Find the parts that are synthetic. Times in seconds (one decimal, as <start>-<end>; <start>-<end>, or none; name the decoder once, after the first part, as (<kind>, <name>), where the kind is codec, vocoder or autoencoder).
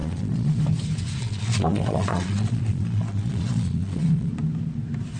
0.0-0.6 (vocoder, Vocos); 1.2-4.3